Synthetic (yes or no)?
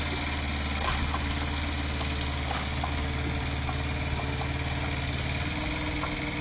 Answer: no